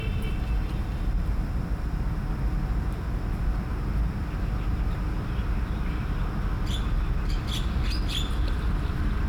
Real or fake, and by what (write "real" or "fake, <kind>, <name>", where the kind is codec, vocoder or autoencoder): real